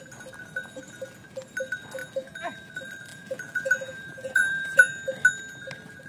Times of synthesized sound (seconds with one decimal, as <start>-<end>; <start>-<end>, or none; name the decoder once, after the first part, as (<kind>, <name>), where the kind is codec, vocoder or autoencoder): 2.0-2.7 (vocoder, BigVGAN v2); 3.1-4.9